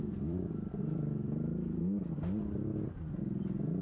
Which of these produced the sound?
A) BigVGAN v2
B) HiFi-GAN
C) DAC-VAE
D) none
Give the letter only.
A